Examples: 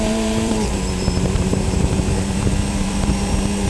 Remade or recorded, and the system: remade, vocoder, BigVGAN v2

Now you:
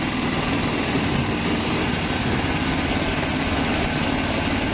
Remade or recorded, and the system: recorded